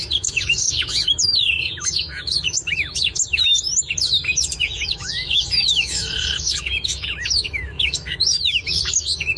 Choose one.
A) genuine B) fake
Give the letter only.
B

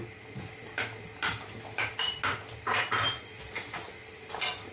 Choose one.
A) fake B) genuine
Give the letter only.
B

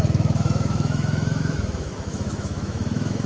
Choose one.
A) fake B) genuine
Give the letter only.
A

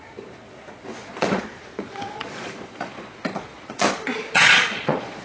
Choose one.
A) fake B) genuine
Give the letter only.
A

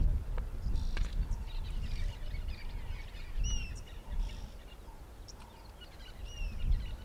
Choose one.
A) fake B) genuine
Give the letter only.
B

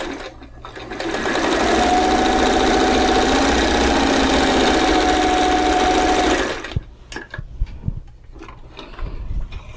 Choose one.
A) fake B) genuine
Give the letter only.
B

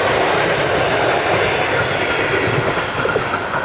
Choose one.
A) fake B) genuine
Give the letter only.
B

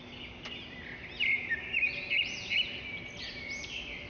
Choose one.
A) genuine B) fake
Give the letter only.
A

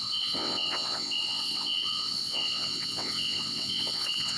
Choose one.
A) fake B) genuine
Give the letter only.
A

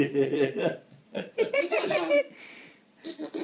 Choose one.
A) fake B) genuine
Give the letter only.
A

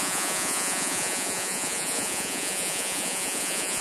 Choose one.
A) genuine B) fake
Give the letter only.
B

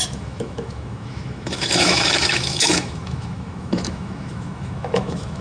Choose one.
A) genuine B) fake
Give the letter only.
B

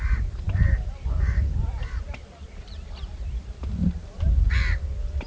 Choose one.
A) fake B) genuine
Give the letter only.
A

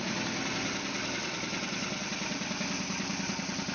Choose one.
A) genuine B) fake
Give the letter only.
A